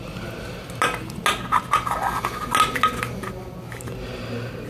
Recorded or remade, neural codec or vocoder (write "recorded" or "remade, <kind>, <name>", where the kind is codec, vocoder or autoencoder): recorded